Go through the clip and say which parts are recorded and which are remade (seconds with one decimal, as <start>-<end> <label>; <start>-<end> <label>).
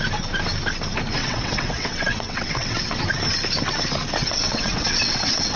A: 0.0-1.2 recorded; 1.2-3.0 remade; 3.0-4.2 recorded; 4.2-5.6 remade